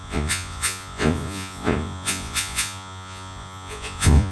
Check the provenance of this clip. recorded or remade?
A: remade